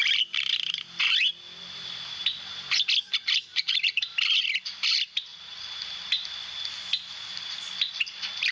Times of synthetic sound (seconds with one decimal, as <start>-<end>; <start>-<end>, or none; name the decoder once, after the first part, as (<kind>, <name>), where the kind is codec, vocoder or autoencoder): 3.5-4.2 (vocoder, BigVGAN v2)